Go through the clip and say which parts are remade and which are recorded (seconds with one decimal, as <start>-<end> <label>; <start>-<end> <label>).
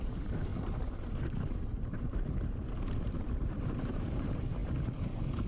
0.0-4.6 remade; 4.6-5.5 recorded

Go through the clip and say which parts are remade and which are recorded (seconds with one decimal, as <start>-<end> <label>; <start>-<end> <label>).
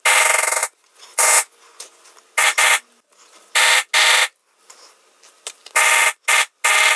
0.0-0.6 recorded; 0.6-2.1 remade; 2.1-7.0 recorded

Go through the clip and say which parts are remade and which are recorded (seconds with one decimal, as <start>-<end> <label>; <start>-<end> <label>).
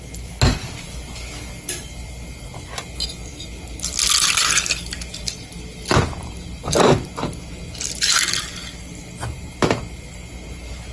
0.0-10.9 recorded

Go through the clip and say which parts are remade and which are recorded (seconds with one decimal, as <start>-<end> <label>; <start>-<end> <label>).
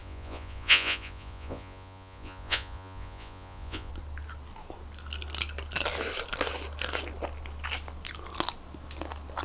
0.0-3.9 remade; 3.9-9.4 recorded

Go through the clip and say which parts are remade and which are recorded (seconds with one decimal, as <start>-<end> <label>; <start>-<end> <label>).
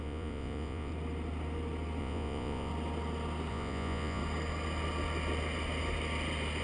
0.0-0.9 remade; 0.9-2.0 recorded; 2.0-2.7 remade; 2.7-3.5 recorded; 3.5-4.2 remade; 4.2-6.6 recorded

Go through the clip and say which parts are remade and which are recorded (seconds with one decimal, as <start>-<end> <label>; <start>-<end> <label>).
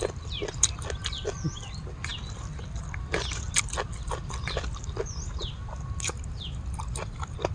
0.0-7.5 recorded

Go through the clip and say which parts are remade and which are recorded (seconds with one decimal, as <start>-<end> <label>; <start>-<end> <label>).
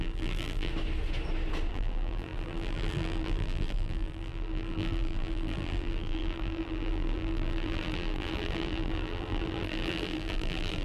0.0-0.7 remade; 0.7-1.7 recorded; 1.7-10.8 remade